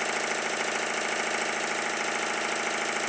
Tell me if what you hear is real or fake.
real